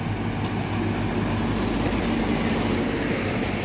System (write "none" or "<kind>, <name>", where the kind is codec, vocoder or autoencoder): none